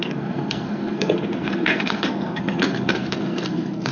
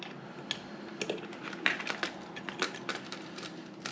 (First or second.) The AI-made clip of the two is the first